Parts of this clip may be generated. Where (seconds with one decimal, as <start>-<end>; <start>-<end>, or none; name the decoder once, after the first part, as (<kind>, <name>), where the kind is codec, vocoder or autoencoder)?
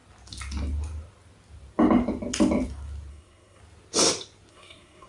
3.1-3.6 (codec, SNAC); 4.5-5.1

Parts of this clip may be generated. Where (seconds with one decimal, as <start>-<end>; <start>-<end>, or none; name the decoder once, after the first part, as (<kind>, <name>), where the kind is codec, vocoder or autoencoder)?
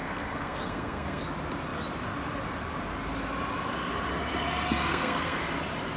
0.0-1.2 (codec, SNAC); 4.9-5.4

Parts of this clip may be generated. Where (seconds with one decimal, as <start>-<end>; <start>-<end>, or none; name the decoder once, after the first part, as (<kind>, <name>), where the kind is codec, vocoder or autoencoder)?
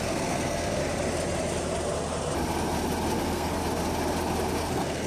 0.0-0.8 (codec, SNAC); 3.2-3.6; 4.6-5.1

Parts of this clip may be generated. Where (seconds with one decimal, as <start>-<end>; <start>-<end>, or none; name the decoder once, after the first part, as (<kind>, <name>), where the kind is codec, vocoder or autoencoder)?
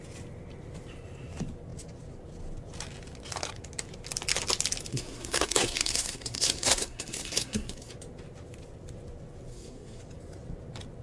4.9-7.9 (codec, SNAC); 9.5-10.0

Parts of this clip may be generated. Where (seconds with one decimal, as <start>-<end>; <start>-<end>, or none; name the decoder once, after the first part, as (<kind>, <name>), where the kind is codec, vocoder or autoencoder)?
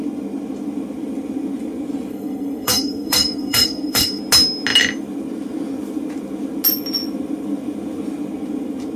2.1-4.2 (codec, SNAC)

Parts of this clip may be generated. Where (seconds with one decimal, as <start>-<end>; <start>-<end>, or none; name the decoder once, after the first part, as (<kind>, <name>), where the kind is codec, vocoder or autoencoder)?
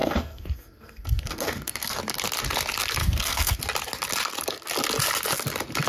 0.0-2.0 (codec, SNAC); 3.0-3.6